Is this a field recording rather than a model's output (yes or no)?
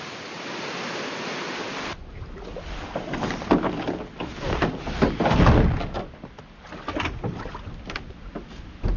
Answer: yes